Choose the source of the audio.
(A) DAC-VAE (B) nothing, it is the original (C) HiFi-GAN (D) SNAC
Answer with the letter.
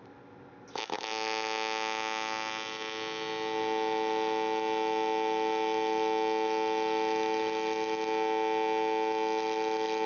B